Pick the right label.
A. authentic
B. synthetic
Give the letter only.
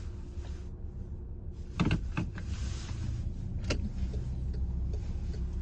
A